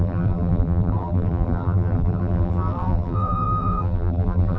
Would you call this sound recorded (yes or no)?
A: no